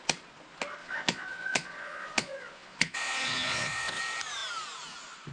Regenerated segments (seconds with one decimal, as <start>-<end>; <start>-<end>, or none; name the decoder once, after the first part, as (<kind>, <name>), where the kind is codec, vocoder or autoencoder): 0.8-4.0 (vocoder, Vocos)